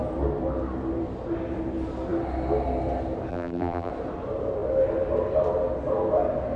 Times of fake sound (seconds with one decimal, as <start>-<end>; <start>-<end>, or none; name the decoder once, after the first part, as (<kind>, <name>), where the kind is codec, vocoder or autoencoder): 3.3-3.9 (vocoder, BigVGAN v2)